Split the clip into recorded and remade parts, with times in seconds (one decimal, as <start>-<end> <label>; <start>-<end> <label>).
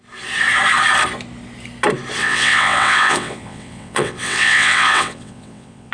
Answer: 0.0-2.2 recorded; 2.2-5.9 remade